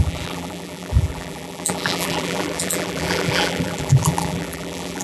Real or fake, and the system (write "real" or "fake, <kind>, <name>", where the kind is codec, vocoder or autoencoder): fake, vocoder, BigVGAN v2